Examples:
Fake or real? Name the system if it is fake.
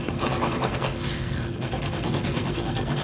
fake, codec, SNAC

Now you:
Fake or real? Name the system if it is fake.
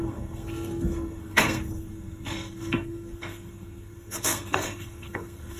fake, codec, SNAC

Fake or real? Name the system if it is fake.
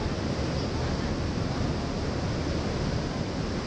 real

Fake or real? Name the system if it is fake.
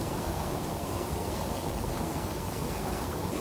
fake, codec, SNAC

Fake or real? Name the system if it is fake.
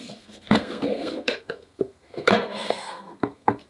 fake, codec, SNAC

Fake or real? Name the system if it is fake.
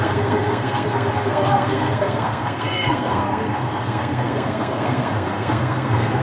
fake, codec, SNAC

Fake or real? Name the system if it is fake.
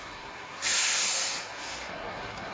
fake, codec, SNAC